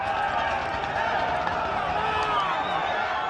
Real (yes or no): yes